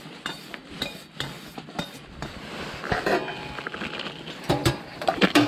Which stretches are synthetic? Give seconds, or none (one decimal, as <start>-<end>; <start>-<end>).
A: 4.6-5.5